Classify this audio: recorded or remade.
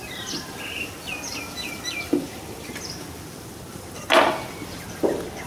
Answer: recorded